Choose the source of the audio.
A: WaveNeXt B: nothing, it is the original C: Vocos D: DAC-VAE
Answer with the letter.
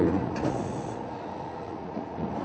C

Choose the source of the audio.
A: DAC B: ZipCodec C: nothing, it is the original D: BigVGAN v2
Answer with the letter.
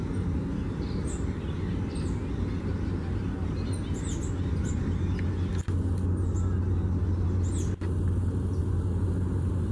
C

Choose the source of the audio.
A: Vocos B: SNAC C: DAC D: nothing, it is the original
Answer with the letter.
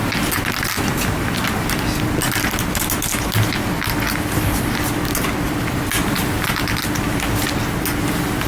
D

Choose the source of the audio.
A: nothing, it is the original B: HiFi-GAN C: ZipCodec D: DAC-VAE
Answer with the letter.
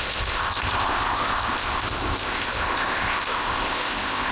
C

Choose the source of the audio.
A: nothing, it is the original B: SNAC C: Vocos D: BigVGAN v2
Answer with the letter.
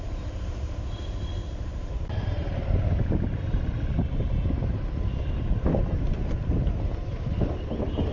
A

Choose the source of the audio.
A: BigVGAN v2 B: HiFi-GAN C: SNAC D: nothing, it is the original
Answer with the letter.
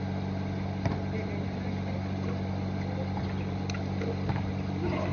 D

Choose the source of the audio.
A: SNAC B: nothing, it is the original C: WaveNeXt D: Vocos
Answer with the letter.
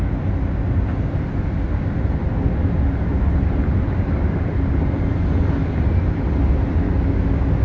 B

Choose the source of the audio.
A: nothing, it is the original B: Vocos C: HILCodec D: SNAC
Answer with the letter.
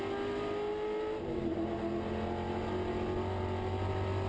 A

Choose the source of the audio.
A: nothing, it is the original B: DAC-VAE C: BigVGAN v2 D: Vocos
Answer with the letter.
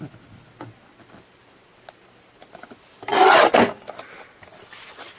A